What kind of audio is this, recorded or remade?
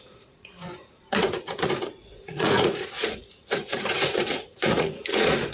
remade